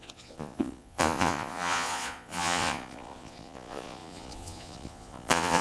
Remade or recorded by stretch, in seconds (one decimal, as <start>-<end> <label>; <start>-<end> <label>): 0.0-5.6 remade